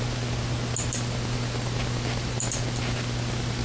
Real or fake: real